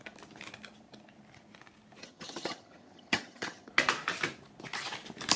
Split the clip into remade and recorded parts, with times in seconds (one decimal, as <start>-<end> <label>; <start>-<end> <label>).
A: 0.0-2.0 recorded; 2.0-3.7 remade; 3.7-5.4 recorded

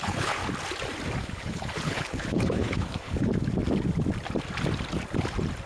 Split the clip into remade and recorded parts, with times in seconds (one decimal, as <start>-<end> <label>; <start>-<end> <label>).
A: 0.0-0.4 remade; 0.4-1.2 recorded; 1.2-3.3 remade; 3.3-5.7 recorded

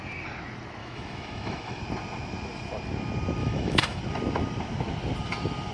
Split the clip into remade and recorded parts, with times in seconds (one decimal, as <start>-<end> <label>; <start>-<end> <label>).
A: 0.0-0.8 recorded; 0.8-1.8 remade; 1.8-3.4 recorded; 3.4-4.0 remade; 4.0-5.7 recorded

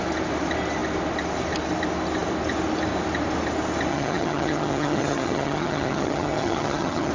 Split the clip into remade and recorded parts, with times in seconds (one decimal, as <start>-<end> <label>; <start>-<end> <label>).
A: 0.0-3.9 recorded; 3.9-7.1 remade

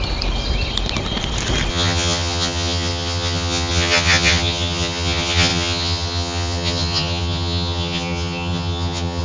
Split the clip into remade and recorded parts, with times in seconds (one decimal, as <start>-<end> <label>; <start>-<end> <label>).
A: 0.0-1.7 recorded; 1.7-9.2 remade

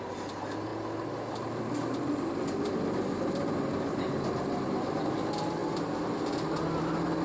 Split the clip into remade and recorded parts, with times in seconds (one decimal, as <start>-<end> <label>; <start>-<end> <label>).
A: 0.0-7.2 recorded

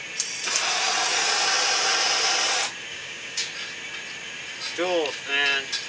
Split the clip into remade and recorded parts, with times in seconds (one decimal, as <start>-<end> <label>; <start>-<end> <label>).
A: 0.0-2.9 recorded; 2.9-3.5 remade; 3.5-5.9 recorded